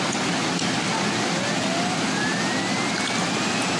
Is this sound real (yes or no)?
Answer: yes